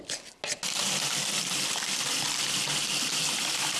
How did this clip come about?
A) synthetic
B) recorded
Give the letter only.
B